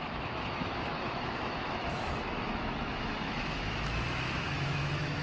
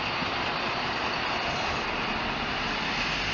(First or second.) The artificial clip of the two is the first